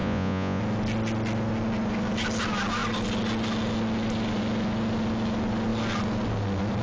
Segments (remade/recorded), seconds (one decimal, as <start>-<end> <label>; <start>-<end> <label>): 0.0-0.6 remade; 0.6-6.8 recorded